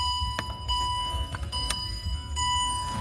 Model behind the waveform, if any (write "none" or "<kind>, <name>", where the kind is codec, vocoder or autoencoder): codec, SNAC